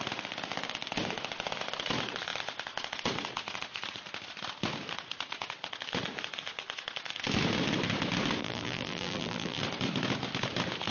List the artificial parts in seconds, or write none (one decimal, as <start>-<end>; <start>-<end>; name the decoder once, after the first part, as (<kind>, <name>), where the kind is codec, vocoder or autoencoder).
8.4-9.6 (vocoder, BigVGAN v2)